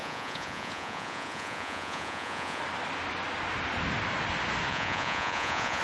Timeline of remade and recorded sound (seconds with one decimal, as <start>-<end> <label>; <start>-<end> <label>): 0.0-2.6 remade; 2.6-4.7 recorded; 4.7-5.8 remade